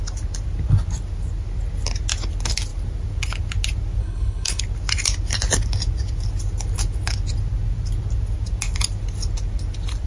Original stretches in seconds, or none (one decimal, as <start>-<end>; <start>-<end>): 0.0-4.0; 4.6-10.1